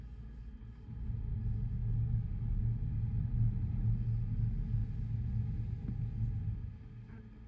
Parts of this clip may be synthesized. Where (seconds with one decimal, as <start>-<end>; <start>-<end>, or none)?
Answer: 1.8-2.6